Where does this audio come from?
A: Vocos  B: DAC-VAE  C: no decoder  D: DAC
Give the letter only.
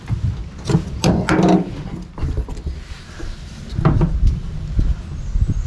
C